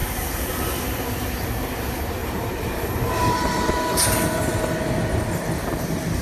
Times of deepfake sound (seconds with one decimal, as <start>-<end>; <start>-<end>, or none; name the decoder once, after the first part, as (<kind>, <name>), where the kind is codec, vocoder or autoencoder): 0.0-0.6 (vocoder, BigVGAN v2); 2.2-3.7